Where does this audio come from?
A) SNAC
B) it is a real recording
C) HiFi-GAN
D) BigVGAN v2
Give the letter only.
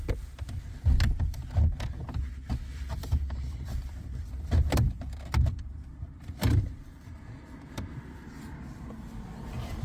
D